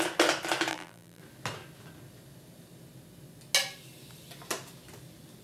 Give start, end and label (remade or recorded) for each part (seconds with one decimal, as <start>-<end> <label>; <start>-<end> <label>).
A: 0.0-0.7 recorded; 0.7-1.2 remade; 1.2-5.4 recorded